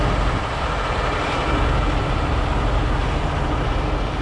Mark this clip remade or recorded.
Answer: recorded